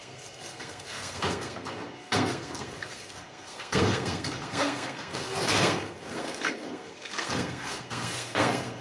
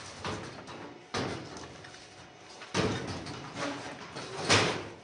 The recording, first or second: second